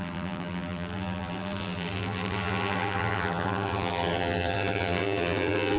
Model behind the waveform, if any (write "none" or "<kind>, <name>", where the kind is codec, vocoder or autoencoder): vocoder, BigVGAN v2